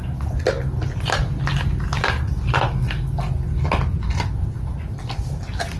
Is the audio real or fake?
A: real